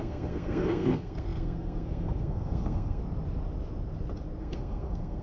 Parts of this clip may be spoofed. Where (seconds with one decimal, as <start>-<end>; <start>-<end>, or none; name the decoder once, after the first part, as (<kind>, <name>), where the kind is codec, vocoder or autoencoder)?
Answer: 0.0-3.0 (codec, SNAC); 4.4-5.2